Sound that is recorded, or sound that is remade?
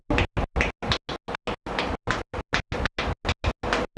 recorded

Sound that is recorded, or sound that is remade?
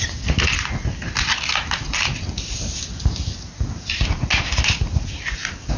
recorded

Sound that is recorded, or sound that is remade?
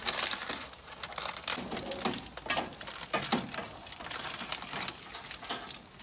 recorded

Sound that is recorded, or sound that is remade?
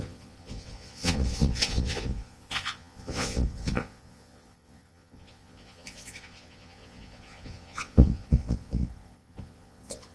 remade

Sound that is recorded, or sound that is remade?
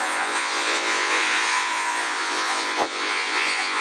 remade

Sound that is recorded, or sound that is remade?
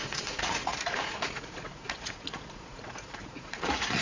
remade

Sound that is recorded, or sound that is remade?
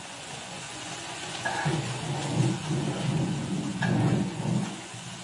remade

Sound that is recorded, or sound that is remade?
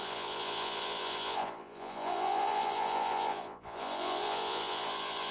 remade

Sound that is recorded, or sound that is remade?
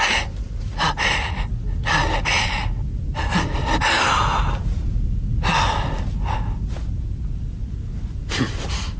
recorded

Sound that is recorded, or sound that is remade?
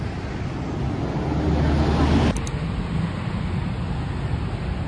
recorded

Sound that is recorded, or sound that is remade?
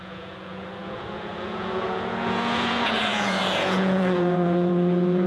remade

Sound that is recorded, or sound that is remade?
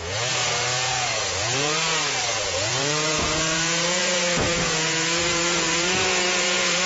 remade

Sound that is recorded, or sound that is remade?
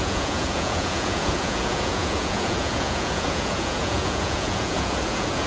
remade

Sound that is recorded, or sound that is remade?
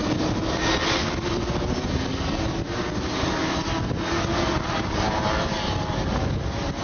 recorded